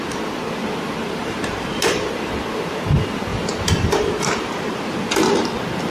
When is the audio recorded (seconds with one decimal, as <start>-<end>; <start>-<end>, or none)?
0.0-1.2; 2.1-3.3; 5.1-5.9